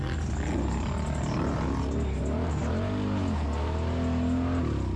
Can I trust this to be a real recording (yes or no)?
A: yes